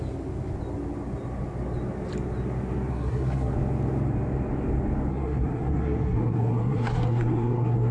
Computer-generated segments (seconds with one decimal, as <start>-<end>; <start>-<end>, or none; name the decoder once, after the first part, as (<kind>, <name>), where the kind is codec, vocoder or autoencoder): 2.9-3.5 (codec, SNAC); 5.1-7.9

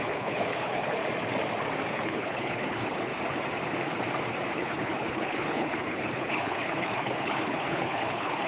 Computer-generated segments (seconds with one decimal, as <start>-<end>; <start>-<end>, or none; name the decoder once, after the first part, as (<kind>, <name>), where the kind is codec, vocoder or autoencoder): 0.0-1.0 (codec, HILCodec); 1.9-3.1; 4.5-8.5

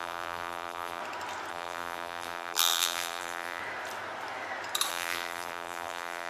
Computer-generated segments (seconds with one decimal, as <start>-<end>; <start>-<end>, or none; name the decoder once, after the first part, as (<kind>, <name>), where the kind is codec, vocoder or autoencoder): 0.0-1.0 (vocoder, BigVGAN v2); 1.5-3.6; 4.9-6.3

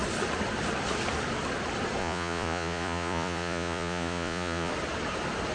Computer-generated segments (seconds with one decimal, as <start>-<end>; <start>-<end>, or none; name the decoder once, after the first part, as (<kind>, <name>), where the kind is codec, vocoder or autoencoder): 2.0-4.7 (vocoder, Vocos)

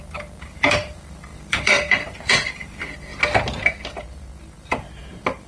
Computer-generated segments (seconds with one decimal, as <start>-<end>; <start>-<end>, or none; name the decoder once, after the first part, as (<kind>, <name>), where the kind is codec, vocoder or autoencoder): 0.0-3.1 (vocoder, BigVGAN v2); 4.0-5.5

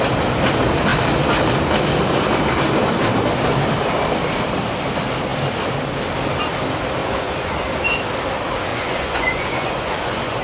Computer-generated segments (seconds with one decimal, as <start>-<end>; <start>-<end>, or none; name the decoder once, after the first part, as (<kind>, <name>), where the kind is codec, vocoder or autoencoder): 7.0-7.5 (vocoder, Vocos); 8.7-10.4

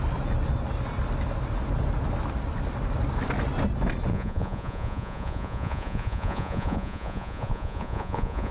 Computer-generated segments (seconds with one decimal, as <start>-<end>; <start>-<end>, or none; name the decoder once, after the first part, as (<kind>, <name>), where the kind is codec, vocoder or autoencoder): 4.1-8.5 (vocoder, Vocos)